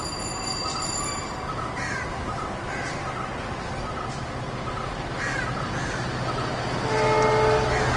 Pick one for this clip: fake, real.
real